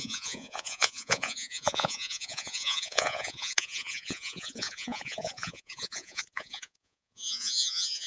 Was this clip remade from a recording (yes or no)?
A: yes